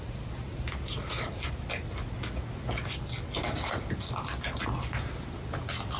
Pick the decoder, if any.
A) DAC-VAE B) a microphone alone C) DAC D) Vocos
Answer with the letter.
B